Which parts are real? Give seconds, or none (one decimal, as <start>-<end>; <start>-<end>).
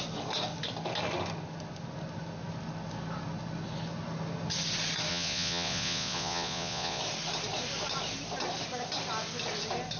0.0-5.1; 7.0-10.0